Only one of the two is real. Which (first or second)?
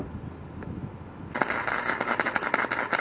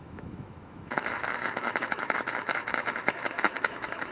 first